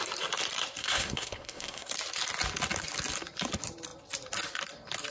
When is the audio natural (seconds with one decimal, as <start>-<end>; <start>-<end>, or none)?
0.0-0.8; 1.9-5.1